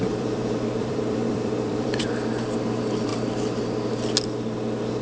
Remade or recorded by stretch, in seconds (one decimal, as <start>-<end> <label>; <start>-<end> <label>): 0.0-2.0 remade; 2.0-5.0 recorded